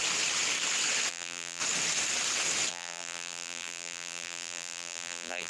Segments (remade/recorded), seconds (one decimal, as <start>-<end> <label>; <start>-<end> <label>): 0.0-1.1 recorded; 1.1-1.6 remade; 1.6-2.7 recorded; 2.7-5.5 remade